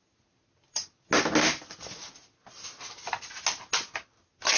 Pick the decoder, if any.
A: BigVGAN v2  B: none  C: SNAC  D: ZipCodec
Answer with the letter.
B